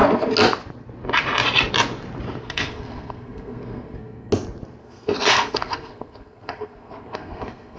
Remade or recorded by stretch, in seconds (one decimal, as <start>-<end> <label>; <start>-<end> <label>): 0.0-2.4 recorded; 2.4-4.3 remade; 4.3-4.8 recorded; 4.8-7.8 remade